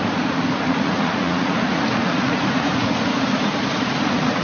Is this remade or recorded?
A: remade